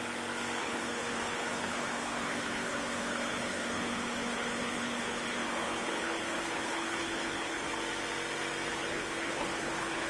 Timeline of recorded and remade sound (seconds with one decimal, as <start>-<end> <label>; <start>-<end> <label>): 0.0-0.6 recorded; 0.6-7.7 remade; 7.7-8.7 recorded; 8.7-10.1 remade